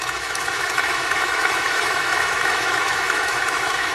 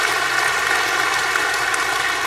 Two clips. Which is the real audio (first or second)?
second